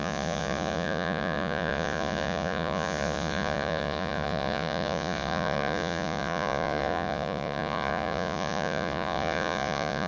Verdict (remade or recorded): remade